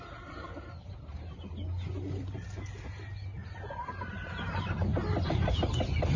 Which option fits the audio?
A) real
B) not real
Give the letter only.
A